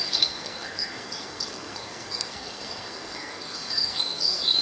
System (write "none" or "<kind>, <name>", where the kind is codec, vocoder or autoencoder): codec, SNAC